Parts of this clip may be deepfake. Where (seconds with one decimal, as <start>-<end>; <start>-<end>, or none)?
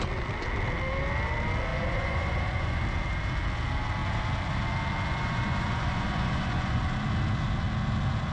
1.7-2.8; 5.1-6.8